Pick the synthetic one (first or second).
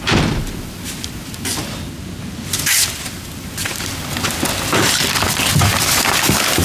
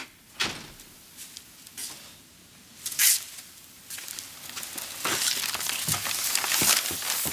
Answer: first